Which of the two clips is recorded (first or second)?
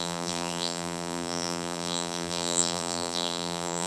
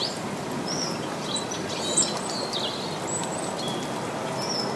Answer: second